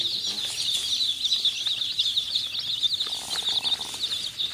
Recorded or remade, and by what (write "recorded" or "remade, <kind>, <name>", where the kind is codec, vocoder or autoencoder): recorded